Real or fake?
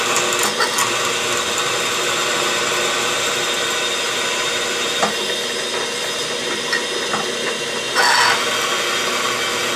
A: real